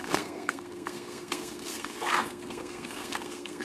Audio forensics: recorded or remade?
remade